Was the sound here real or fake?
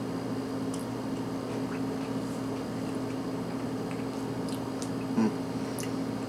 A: real